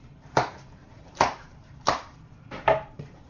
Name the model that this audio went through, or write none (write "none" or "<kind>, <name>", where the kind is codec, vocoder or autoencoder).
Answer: vocoder, BigVGAN v2